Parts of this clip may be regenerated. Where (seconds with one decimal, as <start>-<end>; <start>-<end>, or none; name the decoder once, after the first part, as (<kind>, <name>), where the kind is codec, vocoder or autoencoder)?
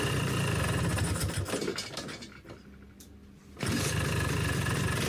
none